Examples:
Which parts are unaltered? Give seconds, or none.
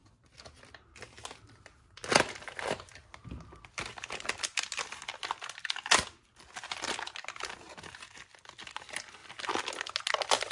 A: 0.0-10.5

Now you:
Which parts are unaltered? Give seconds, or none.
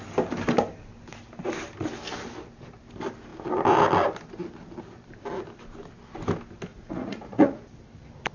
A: 0.0-6.7; 7.6-8.3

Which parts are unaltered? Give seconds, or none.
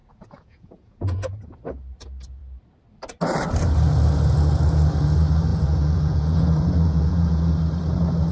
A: 1.5-5.5; 7.5-8.3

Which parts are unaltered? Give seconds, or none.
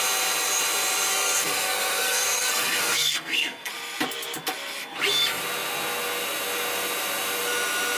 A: 0.0-1.1; 3.7-8.0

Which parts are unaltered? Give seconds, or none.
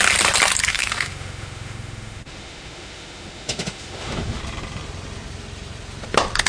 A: 0.0-0.7; 4.4-6.5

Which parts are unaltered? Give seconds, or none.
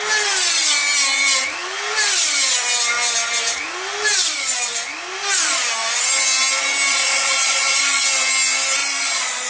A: 0.0-6.9; 8.0-8.8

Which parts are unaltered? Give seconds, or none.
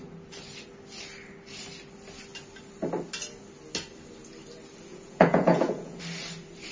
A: 0.0-4.9; 6.0-6.7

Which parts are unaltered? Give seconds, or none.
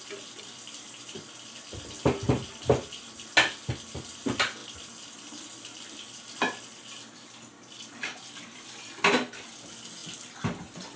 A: 0.0-11.0